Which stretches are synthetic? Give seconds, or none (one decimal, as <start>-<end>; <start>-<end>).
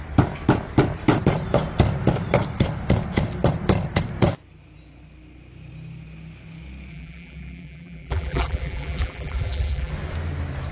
6.9-9.9